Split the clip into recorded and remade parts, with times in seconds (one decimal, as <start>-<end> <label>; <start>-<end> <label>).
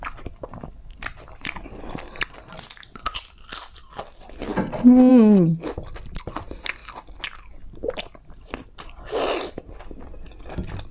0.0-10.9 recorded